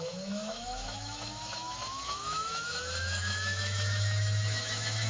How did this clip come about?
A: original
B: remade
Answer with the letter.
B